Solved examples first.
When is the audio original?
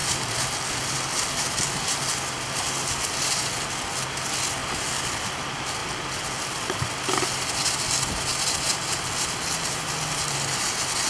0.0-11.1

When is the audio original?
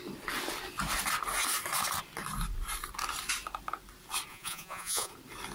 0.0-4.3; 5.1-5.5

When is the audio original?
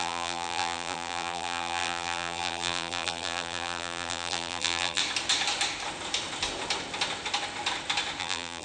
5.0-8.2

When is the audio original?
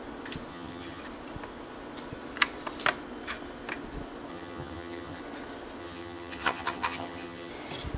0.0-0.5; 1.0-4.3; 5.2-5.8; 7.5-8.0